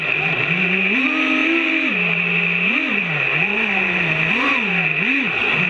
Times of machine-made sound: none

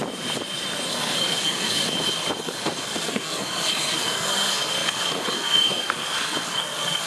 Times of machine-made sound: 0.9-1.8 (codec, SNAC); 2.4-7.1

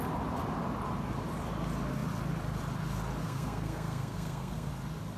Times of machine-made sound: 3.2-4.7 (codec, SNAC)

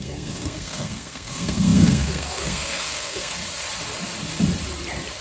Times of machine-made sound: 0.0-3.4 (codec, SNAC)

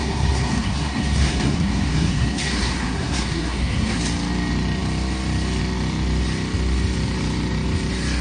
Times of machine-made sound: 0.0-4.0 (codec, SNAC)

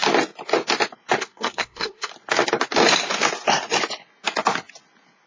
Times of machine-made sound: 1.2-2.1 (codec, SNAC)